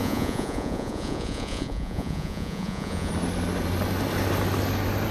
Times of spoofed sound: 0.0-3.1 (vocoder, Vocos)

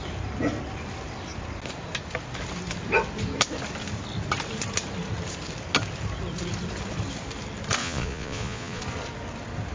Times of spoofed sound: 7.8-8.8 (vocoder, Vocos)

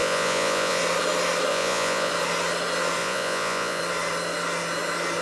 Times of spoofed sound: 0.0-0.8 (vocoder, Vocos); 1.5-2.1; 3.0-3.8

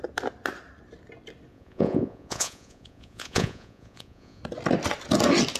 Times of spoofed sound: 1.5-4.4 (vocoder, Vocos)